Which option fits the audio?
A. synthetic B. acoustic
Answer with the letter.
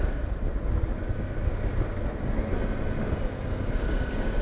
B